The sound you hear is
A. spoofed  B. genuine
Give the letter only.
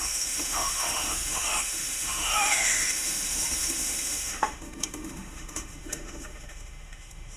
A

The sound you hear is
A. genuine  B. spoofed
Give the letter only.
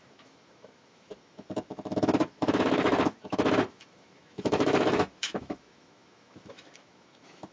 B